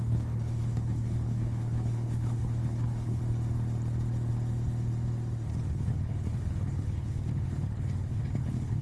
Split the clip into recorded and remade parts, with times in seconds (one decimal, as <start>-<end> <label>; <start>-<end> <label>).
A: 0.0-3.2 remade; 3.2-5.7 recorded; 5.7-8.8 remade